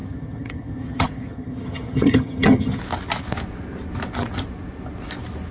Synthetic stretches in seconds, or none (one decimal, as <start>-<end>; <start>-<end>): 0.0-2.8